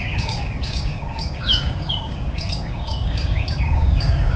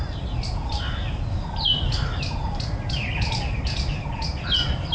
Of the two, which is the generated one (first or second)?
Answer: first